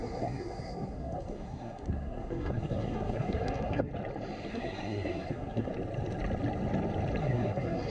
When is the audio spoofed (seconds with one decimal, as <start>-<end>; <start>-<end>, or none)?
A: 0.0-3.9; 4.5-5.7; 7.2-7.9